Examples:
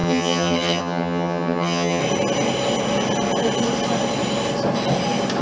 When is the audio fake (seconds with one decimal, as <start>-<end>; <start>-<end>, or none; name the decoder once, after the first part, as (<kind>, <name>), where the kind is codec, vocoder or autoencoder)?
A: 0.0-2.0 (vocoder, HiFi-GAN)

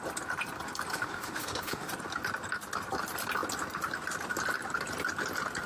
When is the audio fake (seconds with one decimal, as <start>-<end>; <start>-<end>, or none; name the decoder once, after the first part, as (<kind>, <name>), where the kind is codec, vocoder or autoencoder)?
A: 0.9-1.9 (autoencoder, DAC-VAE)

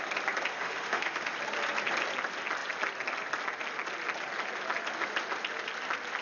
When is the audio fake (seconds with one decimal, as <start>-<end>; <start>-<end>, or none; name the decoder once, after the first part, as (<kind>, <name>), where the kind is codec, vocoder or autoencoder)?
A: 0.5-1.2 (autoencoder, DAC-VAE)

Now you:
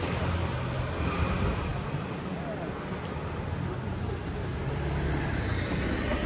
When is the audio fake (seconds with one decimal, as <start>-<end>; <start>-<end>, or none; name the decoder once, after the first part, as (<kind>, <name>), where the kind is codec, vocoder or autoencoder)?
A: none

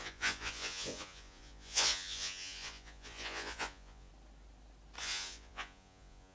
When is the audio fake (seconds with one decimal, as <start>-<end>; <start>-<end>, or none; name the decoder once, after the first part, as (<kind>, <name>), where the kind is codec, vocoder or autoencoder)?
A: 0.0-4.1 (vocoder, Vocos); 5.0-6.3

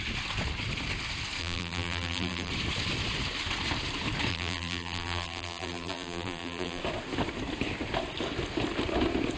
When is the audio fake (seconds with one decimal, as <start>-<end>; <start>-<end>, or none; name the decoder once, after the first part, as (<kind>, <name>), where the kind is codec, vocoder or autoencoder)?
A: 1.4-2.5 (vocoder, BigVGAN v2); 4.3-6.8

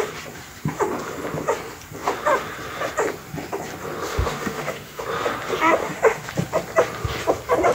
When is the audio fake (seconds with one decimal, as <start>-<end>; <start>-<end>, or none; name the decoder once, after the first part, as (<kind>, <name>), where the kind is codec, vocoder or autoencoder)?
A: 4.1-5.0 (autoencoder, DAC-VAE); 5.8-6.3